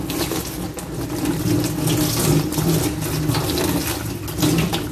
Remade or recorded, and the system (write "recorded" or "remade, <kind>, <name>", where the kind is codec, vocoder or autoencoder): recorded